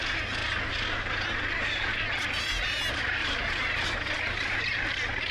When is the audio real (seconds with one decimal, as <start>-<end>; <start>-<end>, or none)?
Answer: 0.0-3.2; 4.6-5.3